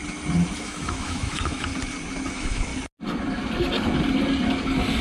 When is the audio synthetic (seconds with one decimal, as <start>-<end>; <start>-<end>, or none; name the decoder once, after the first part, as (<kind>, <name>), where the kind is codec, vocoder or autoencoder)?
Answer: 0.6-1.7 (autoencoder, DAC-VAE); 2.3-2.7